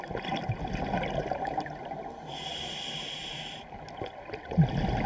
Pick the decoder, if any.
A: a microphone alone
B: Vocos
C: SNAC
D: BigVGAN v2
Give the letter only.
A